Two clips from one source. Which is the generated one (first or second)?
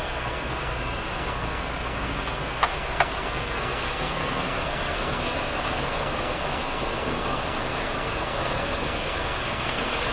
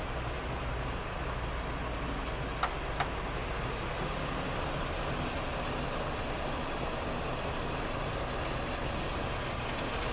first